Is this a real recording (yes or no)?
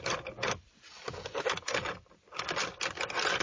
yes